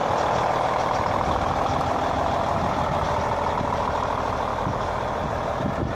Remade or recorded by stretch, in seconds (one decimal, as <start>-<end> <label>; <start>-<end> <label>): 0.0-4.5 recorded; 4.5-5.0 remade; 5.0-5.9 recorded